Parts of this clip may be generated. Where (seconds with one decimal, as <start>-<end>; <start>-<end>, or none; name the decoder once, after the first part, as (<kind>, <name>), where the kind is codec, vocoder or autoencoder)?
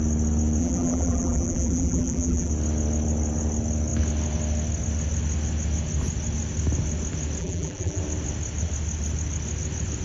0.6-2.5 (vocoder, BigVGAN v2); 7.4-8.0